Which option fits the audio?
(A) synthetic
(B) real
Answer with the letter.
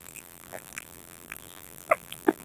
A